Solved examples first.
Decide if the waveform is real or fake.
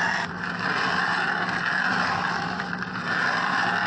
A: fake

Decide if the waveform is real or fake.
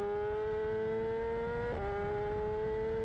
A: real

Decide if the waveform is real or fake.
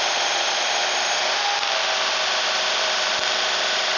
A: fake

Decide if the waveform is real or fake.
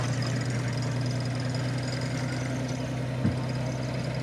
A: real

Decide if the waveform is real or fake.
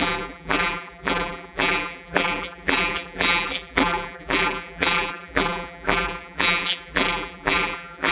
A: fake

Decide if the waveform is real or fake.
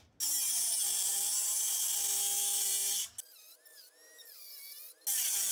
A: real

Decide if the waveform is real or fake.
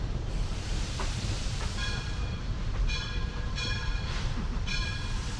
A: fake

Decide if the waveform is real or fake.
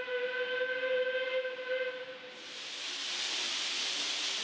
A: real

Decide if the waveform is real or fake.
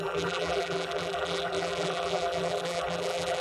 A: fake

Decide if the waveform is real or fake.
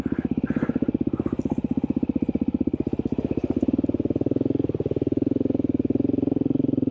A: real